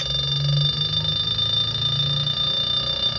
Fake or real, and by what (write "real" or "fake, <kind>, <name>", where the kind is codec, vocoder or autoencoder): real